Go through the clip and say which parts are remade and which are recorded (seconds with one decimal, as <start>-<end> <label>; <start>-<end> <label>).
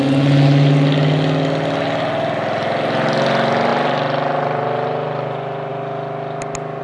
0.0-3.7 recorded; 3.7-5.7 remade; 5.7-6.8 recorded